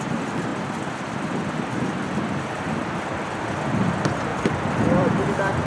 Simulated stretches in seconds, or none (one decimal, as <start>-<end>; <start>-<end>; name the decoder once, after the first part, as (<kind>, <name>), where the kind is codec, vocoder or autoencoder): 0.5-3.9 (vocoder, BigVGAN v2); 4.3-5.2